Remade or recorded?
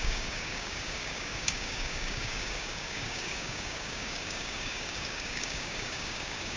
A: remade